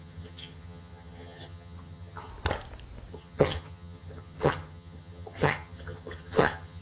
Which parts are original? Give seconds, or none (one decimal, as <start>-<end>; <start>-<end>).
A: 2.3-3.1